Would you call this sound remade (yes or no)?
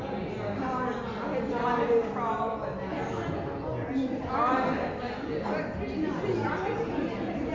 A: no